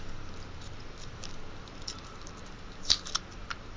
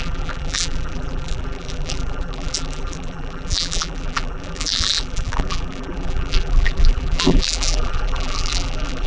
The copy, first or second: second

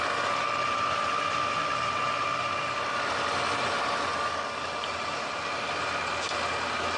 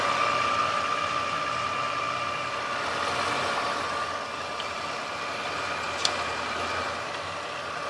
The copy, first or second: second